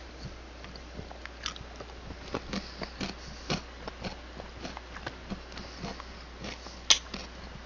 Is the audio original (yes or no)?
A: yes